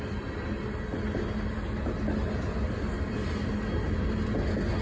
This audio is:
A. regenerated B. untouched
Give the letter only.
B